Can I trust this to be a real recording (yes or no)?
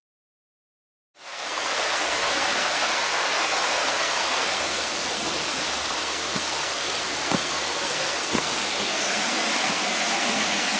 no